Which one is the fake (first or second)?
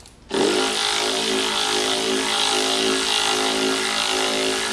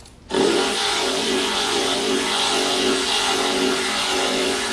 second